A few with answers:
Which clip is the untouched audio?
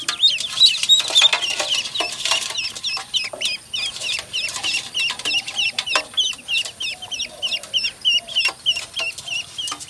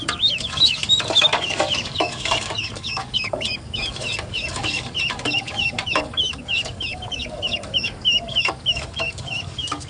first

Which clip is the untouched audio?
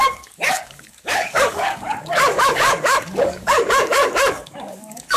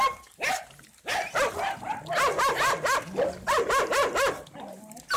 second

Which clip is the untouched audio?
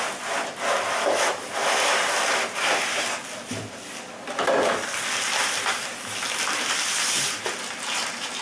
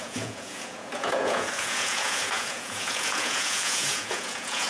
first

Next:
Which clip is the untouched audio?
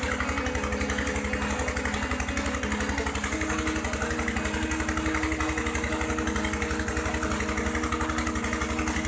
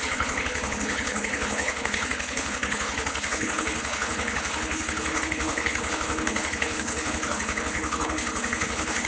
first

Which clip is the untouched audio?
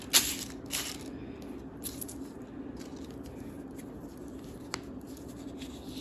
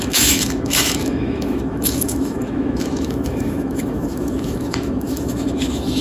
first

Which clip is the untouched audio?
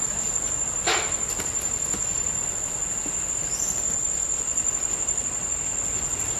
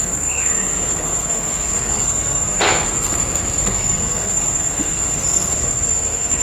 first